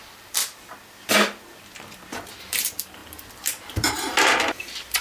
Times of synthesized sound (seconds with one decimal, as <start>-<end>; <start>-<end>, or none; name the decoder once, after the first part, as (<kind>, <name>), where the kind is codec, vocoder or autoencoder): 0.0-0.4 (vocoder, BigVGAN v2); 2.4-3.0; 3.7-5.0